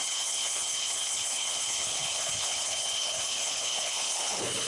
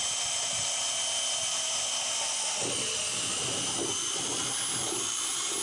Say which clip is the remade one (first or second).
first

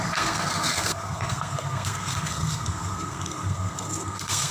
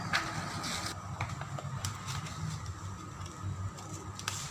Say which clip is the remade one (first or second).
first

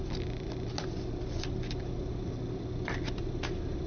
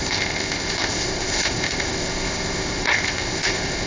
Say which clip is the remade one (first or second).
second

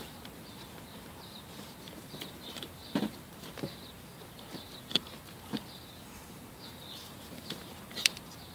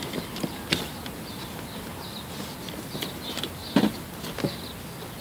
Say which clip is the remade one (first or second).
first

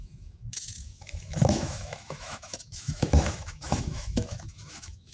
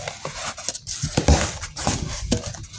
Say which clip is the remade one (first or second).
first